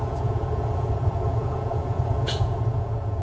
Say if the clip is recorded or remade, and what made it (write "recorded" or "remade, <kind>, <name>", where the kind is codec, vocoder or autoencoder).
remade, vocoder, Vocos